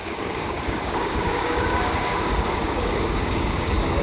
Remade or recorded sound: remade